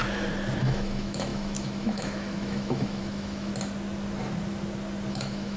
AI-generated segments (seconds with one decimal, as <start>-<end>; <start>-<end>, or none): 0.6-3.5; 5.1-5.6